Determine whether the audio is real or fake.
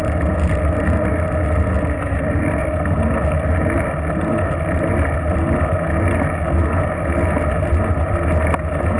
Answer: real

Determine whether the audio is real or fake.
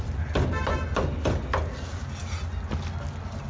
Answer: real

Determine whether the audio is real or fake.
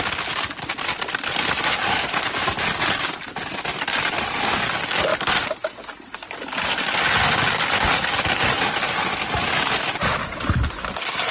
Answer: real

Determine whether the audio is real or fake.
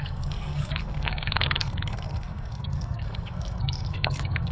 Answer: fake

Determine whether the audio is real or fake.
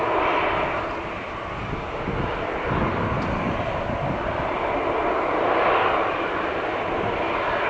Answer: real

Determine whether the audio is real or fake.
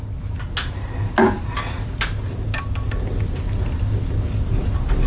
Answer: real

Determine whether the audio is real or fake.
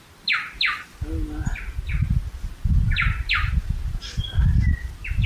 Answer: real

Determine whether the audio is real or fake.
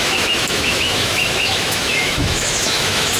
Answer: fake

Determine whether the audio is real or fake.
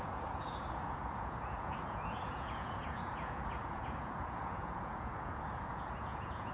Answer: fake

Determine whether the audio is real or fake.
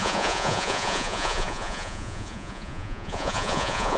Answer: fake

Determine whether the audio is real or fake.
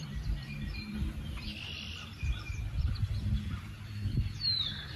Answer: fake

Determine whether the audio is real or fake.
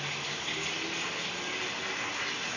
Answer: real